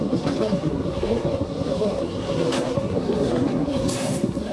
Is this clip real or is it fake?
fake